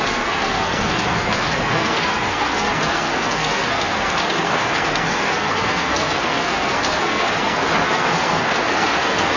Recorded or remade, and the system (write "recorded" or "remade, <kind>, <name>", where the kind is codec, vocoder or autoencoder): remade, codec, SNAC